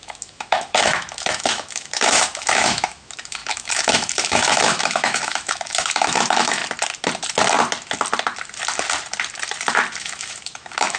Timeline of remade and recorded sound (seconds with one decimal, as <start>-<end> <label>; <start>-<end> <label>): 0.0-6.6 remade; 6.6-10.0 recorded; 10.0-11.0 remade